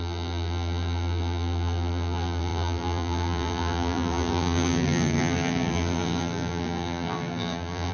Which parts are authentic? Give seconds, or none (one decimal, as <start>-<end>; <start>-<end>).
none